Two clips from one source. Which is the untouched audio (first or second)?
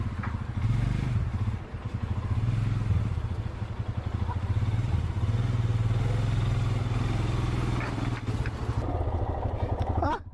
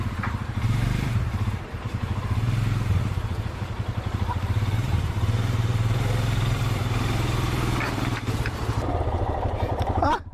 first